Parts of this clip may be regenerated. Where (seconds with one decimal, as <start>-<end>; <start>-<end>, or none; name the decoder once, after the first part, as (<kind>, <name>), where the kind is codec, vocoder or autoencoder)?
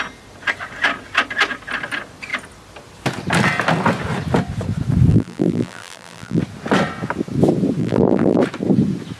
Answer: 5.1-6.4 (vocoder, BigVGAN v2); 7.8-8.4